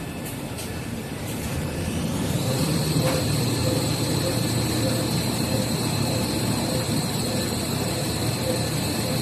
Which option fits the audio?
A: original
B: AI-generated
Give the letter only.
B